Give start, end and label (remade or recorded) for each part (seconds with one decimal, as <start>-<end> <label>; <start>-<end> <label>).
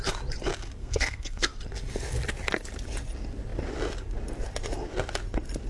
0.0-0.8 recorded; 0.8-1.5 remade; 1.5-5.7 recorded